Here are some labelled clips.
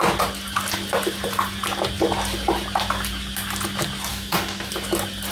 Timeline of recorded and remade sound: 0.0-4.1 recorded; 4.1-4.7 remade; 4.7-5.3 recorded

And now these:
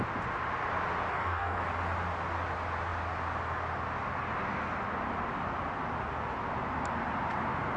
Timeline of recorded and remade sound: 0.0-1.1 recorded; 1.1-1.6 remade; 1.6-7.8 recorded